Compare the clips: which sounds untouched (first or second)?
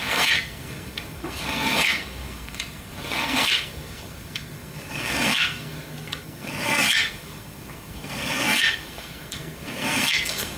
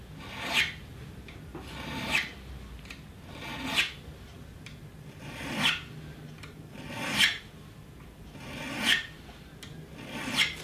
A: second